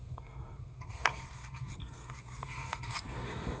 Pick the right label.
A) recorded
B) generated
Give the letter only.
B